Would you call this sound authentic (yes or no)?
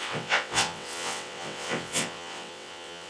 no